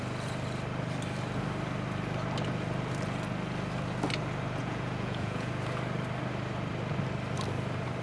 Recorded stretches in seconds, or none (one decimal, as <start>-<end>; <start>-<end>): 0.0-4.6; 5.5-8.0